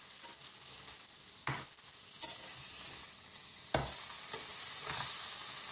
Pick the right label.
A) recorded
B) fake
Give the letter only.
A